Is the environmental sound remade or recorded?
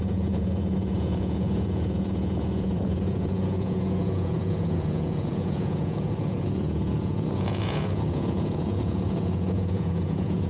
remade